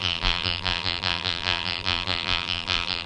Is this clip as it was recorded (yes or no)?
no